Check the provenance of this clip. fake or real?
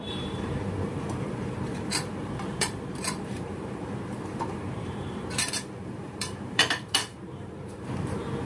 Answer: fake